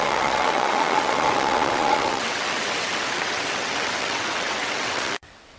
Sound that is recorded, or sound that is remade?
remade